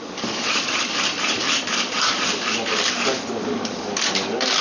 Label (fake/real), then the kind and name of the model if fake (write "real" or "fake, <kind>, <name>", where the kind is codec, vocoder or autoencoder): fake, codec, DAC